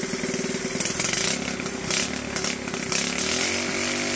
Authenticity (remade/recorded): recorded